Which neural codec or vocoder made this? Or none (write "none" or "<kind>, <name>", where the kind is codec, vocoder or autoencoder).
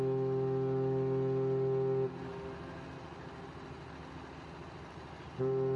none